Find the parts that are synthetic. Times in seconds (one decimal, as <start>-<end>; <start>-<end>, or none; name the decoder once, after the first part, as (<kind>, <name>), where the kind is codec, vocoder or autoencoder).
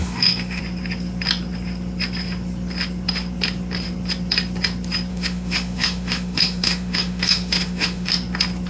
0.0-0.6 (autoencoder, DAC-VAE); 5.1-8.1